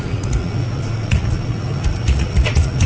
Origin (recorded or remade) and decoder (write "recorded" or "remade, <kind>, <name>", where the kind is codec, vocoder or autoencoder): remade, vocoder, Vocos